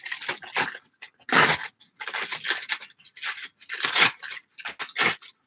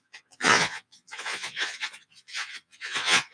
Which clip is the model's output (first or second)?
second